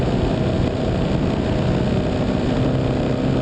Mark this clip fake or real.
real